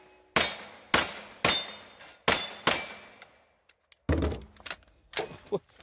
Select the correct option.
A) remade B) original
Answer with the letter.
B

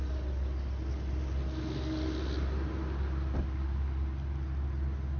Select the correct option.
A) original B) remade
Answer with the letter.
A